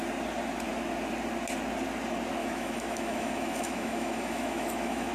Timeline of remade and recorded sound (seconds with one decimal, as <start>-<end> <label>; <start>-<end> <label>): 0.0-2.4 recorded; 2.4-5.1 remade